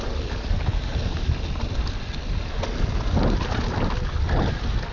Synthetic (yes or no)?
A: no